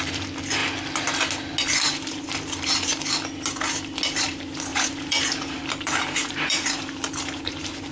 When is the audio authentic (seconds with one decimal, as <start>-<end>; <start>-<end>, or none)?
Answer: 0.0-4.7